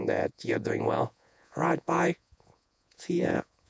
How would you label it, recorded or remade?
remade